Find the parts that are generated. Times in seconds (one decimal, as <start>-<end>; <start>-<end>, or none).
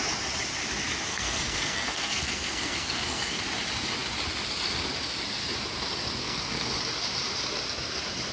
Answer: 1.1-3.4; 6.2-6.7